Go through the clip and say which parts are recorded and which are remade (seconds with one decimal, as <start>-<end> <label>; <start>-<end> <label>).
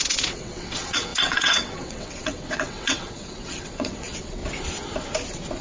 0.0-4.4 remade; 4.4-5.6 recorded